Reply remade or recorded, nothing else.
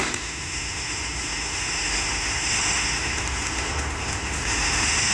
remade